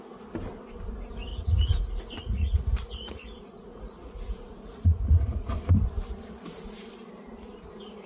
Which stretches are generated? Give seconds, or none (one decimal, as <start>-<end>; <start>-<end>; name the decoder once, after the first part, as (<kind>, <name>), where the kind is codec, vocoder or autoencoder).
1.3-5.5 (vocoder, Vocos)